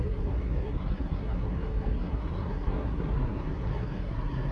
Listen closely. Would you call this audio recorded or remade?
remade